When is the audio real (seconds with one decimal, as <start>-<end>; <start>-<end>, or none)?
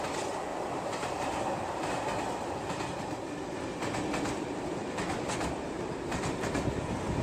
0.0-0.5; 1.9-7.2